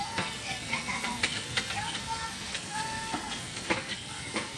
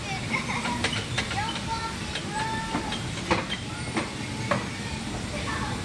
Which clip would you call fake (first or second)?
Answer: first